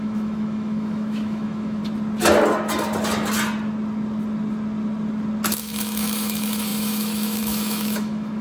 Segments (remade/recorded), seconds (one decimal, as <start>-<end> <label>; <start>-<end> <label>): 0.0-1.8 remade; 1.8-5.6 recorded; 5.6-8.4 remade